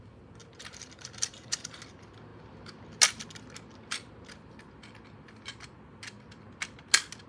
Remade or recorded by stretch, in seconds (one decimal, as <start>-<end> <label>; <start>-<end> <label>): 0.0-0.4 recorded; 0.4-1.8 remade; 1.8-7.3 recorded